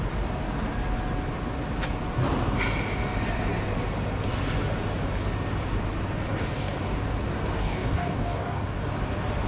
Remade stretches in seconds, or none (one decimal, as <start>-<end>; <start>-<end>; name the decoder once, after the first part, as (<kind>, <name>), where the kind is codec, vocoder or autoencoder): 6.3-6.8 (codec, DAC); 7.6-8.9